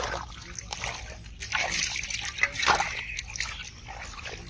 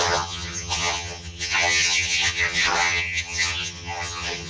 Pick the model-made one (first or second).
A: second